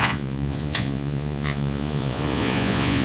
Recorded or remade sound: remade